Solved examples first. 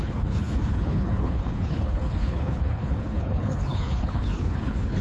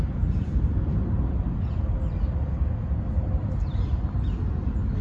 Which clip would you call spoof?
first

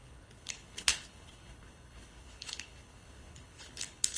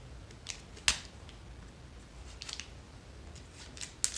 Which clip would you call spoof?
first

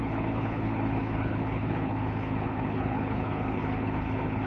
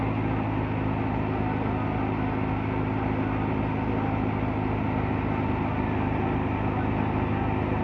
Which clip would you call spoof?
first